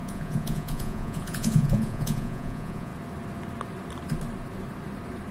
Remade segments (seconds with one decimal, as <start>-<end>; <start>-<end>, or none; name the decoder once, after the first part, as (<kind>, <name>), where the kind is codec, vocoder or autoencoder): 0.0-2.9 (vocoder, Vocos)